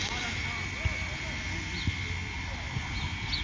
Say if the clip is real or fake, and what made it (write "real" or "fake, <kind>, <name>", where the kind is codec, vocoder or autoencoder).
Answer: real